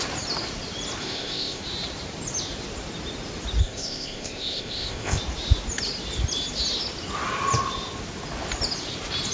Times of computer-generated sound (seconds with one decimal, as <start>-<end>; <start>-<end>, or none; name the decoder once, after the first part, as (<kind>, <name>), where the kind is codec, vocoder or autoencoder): 1.0-1.6 (codec, ZipCodec); 3.6-5.2